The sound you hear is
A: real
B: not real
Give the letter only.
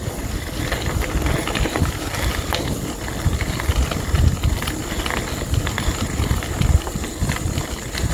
A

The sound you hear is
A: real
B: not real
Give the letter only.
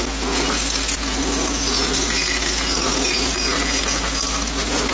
A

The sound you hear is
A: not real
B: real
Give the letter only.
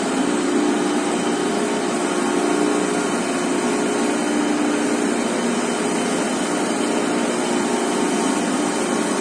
B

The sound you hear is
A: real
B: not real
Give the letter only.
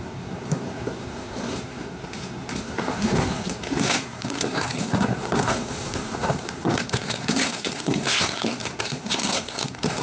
B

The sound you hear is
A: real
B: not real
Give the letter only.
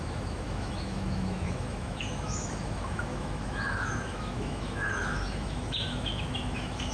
B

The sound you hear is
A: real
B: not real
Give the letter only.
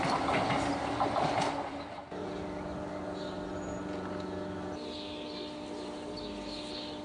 A